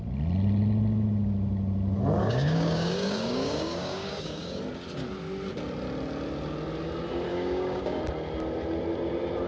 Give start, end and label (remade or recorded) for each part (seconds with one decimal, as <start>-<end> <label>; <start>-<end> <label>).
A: 0.0-2.2 recorded; 2.2-4.6 remade; 4.6-7.3 recorded; 7.3-8.0 remade; 8.0-9.5 recorded